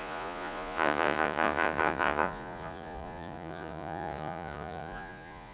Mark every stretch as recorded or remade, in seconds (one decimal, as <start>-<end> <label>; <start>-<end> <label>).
0.0-5.5 remade